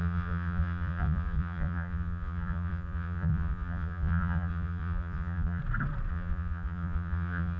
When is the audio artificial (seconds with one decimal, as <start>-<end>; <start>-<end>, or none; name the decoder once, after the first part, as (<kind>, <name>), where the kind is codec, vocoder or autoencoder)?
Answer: 0.0-5.6 (vocoder, Vocos); 6.1-7.6